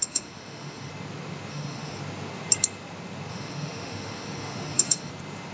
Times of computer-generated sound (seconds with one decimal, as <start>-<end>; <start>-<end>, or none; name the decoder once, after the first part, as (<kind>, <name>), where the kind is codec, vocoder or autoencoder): 0.0-0.9 (autoencoder, DAC-VAE); 1.5-2.0; 3.3-5.1